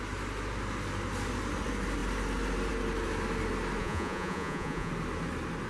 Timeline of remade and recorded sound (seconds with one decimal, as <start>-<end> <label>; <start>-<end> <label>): 0.0-3.8 recorded; 3.8-4.9 remade; 4.9-5.7 recorded